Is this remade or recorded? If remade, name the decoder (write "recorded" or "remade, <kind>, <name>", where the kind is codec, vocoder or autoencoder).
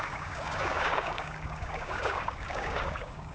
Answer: remade, codec, DAC